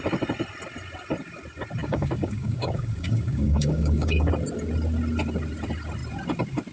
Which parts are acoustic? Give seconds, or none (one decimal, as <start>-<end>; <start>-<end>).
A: 0.0-1.8; 4.3-6.7